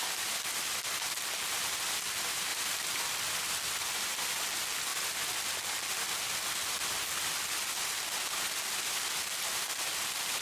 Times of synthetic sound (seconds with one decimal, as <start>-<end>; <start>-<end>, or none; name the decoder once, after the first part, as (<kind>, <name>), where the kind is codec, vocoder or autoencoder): 2.5-3.6 (vocoder, BigVGAN v2)